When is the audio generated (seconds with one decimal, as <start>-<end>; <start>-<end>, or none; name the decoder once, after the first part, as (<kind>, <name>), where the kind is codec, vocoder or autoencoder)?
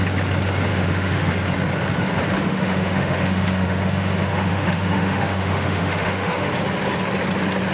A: 0.7-1.3 (autoencoder, DAC-VAE); 2.5-6.5